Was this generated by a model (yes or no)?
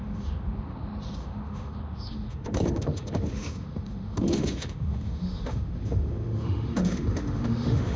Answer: yes